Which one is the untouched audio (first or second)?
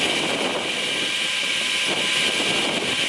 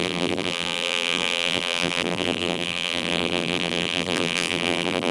first